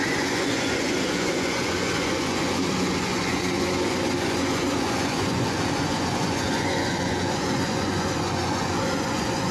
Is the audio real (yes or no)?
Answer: no